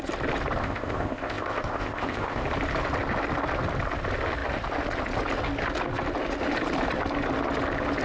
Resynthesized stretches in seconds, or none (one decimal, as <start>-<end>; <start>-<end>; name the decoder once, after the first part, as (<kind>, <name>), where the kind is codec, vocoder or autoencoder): 0.6-2.4 (codec, ZipCodec)